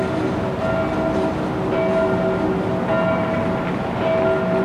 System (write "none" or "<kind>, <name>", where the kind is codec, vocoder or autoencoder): none